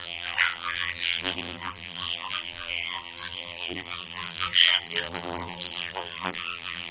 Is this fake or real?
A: fake